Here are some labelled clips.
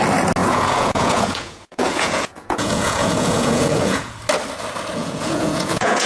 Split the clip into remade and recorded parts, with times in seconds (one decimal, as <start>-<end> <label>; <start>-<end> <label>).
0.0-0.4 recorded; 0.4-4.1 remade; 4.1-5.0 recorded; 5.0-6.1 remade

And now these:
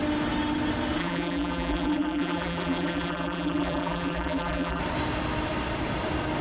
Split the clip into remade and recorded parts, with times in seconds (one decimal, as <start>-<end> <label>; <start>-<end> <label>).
0.0-1.0 recorded; 1.0-4.8 remade; 4.8-6.4 recorded

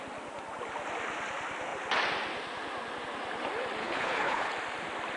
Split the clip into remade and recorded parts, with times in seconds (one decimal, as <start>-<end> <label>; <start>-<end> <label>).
0.0-3.8 recorded; 3.8-4.5 remade; 4.5-5.2 recorded

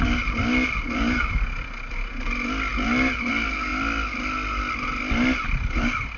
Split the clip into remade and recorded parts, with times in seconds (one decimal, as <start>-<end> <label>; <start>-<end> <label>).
0.0-6.2 recorded

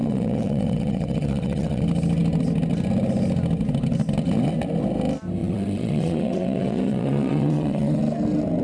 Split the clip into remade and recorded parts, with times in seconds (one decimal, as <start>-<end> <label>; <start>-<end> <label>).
0.0-1.8 remade; 1.8-5.4 recorded; 5.4-8.0 remade; 8.0-8.6 recorded